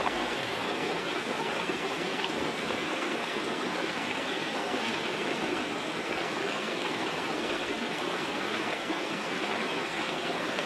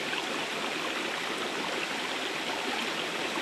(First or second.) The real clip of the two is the second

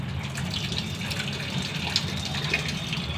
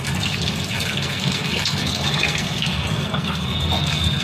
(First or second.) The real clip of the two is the first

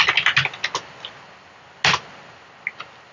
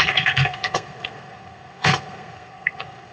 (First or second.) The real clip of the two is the first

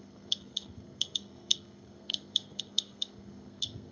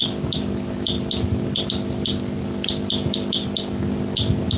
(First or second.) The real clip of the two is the second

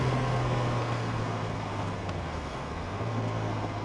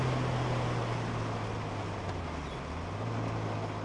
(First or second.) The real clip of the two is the second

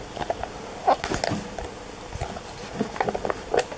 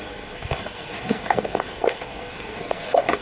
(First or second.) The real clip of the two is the first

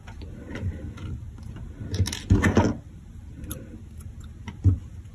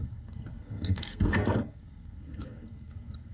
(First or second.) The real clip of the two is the first